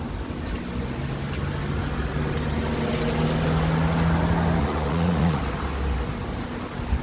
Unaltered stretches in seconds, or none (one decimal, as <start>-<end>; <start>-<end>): 0.0-4.6; 5.4-7.0